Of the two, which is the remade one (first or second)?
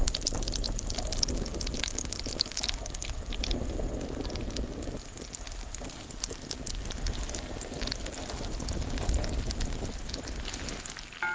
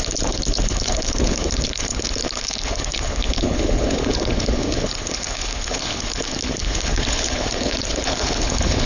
second